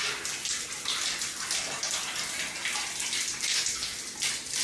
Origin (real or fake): real